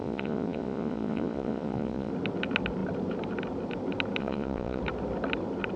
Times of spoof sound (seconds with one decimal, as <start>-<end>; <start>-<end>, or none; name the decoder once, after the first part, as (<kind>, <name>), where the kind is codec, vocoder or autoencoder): 0.0-2.1 (vocoder, Vocos); 4.2-4.8

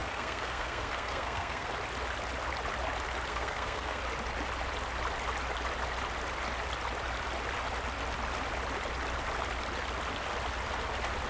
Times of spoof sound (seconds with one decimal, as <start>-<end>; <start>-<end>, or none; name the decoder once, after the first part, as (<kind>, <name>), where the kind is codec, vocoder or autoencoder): 0.0-1.7 (codec, SNAC); 3.3-4.0

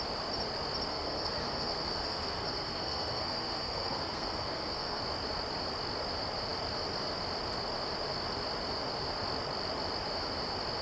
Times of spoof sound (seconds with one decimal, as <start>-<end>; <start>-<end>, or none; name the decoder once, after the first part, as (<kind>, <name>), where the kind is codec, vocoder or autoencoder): 0.9-5.0 (codec, SNAC)

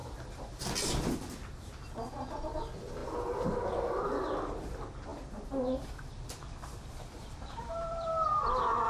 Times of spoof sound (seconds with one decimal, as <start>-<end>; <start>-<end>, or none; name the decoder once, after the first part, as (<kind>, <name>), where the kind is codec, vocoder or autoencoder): 0.0-0.6 (vocoder, BigVGAN v2); 5.1-8.1

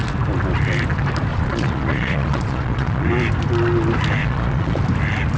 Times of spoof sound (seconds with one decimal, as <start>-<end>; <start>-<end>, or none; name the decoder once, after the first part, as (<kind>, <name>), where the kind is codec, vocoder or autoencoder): 1.3-3.1 (vocoder, Vocos); 4.2-4.8

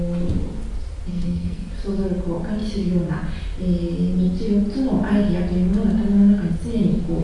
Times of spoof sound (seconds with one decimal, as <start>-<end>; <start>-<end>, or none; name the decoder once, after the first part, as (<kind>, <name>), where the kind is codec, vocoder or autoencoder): 1.1-1.7 (codec, SNAC)

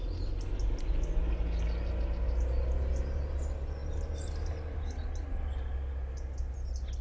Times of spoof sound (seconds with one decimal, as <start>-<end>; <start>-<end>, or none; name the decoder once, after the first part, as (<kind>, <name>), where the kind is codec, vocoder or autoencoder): none

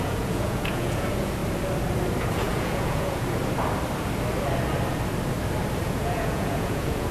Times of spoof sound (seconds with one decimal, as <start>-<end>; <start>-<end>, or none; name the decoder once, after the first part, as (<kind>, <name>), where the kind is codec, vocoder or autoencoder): 0.0-1.4 (vocoder, Vocos); 2.2-3.4; 5.8-7.1